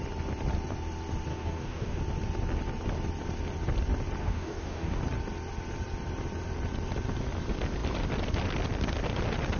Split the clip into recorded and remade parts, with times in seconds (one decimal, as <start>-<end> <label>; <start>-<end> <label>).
0.0-1.3 recorded; 1.3-2.0 remade; 2.0-4.2 recorded; 4.2-5.0 remade; 5.0-9.6 recorded